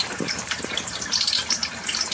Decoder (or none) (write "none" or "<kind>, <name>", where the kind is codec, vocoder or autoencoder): vocoder, BigVGAN v2